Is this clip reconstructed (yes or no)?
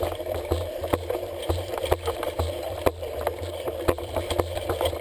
yes